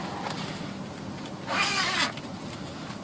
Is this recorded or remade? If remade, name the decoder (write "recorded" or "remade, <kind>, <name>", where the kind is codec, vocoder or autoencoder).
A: recorded